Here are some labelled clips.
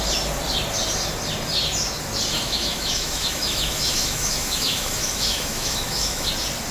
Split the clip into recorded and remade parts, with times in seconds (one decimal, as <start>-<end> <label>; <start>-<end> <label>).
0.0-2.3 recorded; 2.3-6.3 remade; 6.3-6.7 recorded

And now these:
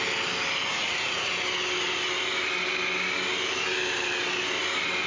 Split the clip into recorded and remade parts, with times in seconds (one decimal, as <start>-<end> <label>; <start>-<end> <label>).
0.0-0.7 recorded; 0.7-1.3 remade; 1.3-5.1 recorded

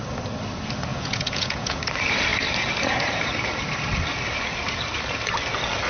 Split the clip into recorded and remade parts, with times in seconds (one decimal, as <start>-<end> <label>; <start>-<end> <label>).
0.0-0.9 recorded; 0.9-1.8 remade; 1.8-5.9 recorded